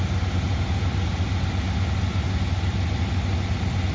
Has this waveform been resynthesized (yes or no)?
no